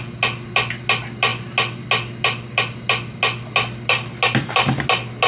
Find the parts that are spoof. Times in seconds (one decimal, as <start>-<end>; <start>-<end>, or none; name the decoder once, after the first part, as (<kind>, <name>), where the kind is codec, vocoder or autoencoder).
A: none